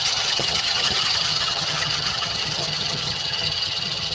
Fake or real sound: fake